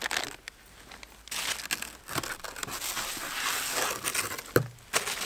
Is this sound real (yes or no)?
yes